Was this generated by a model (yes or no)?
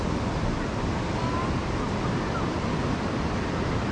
no